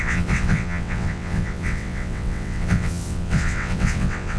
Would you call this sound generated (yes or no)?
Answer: yes